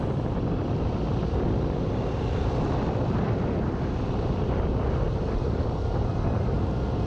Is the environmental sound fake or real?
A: real